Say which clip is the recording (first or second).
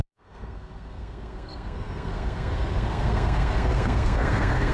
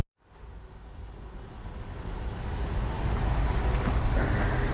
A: second